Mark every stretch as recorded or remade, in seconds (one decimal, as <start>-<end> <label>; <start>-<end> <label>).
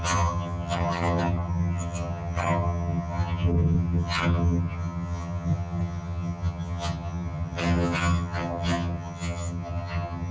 0.0-10.3 remade